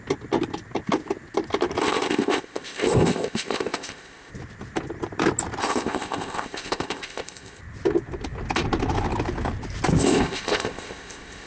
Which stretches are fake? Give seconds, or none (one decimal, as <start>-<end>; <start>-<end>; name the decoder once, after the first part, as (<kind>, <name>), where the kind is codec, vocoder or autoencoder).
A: 1.8-4.3 (codec, ZipCodec); 5.6-7.6; 10.0-11.5